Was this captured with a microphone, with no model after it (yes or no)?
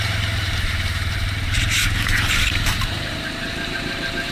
no